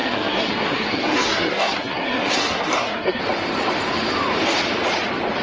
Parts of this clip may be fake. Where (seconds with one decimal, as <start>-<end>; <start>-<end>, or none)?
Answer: 0.0-3.2